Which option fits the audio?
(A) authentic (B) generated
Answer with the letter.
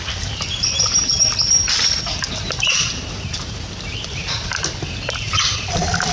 B